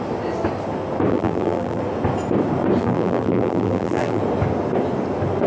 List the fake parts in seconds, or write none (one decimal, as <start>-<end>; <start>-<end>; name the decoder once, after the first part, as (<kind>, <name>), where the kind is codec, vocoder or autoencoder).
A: 1.1-1.8 (vocoder, BigVGAN v2); 2.8-4.2